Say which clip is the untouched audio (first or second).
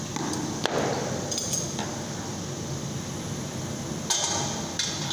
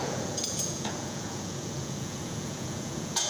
first